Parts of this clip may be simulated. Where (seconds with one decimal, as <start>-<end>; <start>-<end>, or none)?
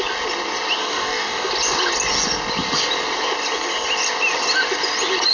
0.8-1.5